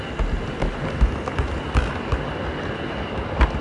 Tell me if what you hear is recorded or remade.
recorded